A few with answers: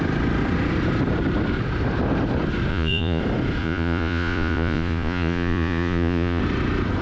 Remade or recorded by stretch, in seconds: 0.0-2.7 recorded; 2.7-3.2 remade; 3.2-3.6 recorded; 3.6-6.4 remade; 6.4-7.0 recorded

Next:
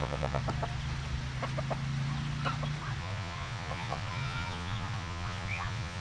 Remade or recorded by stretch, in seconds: 0.0-0.4 remade; 0.4-3.0 recorded; 3.0-6.0 remade